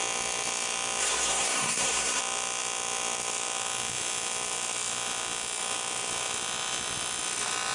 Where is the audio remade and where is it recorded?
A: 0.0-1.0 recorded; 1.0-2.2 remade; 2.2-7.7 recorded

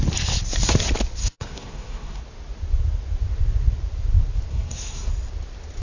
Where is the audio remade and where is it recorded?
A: 0.0-1.2 recorded; 1.2-2.2 remade; 2.2-4.5 recorded; 4.5-5.1 remade; 5.1-5.8 recorded

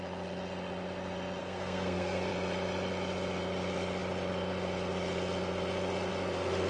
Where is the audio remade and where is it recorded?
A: 0.0-1.4 recorded; 1.4-2.3 remade; 2.3-6.7 recorded